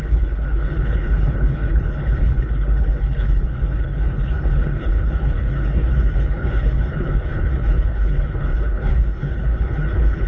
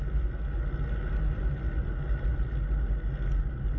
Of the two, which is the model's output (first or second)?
first